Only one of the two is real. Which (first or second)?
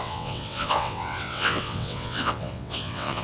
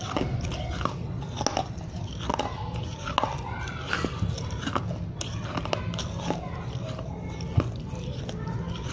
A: second